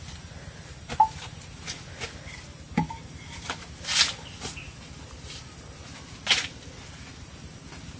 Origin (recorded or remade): recorded